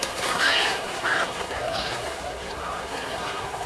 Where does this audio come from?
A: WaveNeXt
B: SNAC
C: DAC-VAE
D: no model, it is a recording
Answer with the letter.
B